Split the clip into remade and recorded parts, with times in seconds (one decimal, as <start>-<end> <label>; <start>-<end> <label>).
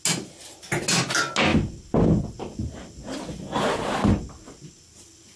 0.0-5.4 recorded